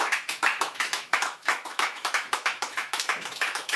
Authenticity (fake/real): fake